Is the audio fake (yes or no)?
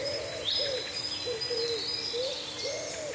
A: no